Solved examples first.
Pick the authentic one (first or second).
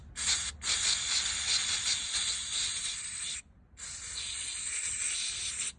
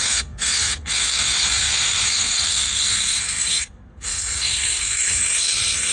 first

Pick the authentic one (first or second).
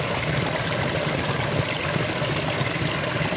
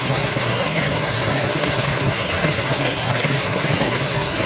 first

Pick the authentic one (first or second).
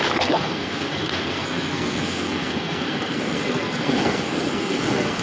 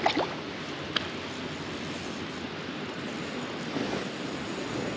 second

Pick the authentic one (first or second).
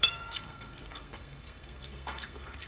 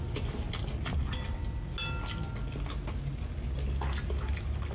second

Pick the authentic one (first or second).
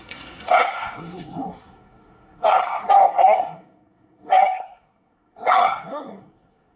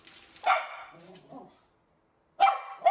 second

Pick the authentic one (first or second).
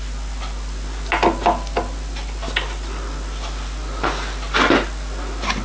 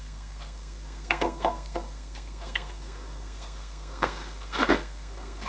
first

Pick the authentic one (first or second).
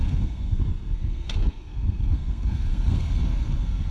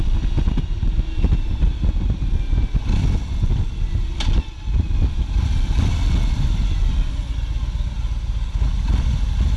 second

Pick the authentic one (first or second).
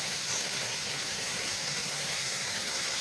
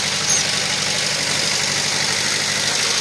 second